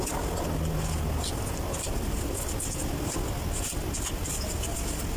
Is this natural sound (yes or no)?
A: yes